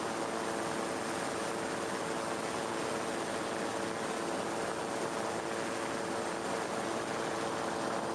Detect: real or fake real